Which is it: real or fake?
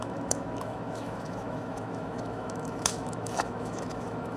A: fake